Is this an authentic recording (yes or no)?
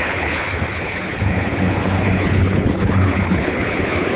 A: no